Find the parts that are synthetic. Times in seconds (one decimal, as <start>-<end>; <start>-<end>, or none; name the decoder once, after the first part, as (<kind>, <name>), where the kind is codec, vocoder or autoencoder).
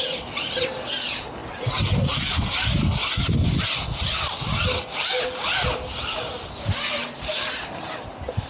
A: none